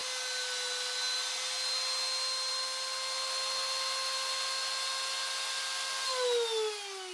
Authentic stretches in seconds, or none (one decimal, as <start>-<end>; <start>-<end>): 0.0-7.1